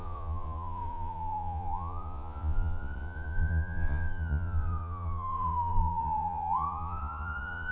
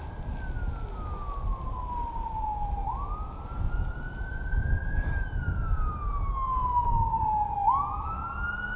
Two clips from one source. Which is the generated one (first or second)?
first